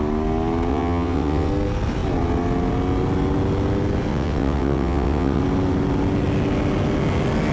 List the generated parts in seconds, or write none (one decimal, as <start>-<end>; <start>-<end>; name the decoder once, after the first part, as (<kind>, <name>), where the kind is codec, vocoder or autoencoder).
0.7-1.5 (vocoder, WaveNeXt); 4.1-5.4